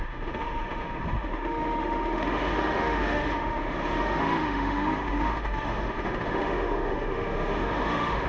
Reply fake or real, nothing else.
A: fake